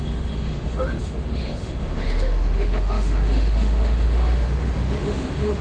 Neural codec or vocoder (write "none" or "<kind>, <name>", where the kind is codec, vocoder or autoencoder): autoencoder, DAC-VAE